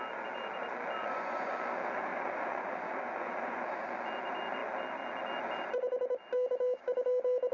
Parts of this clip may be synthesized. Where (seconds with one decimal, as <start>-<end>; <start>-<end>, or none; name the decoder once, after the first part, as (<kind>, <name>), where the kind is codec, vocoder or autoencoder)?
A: 1.0-1.5 (vocoder, Vocos); 2.1-3.6